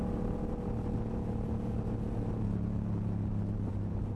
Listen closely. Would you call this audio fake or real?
real